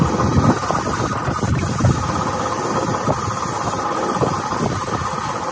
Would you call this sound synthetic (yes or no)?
no